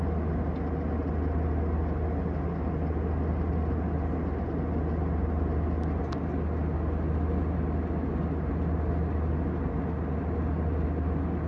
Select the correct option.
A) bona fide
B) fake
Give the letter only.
A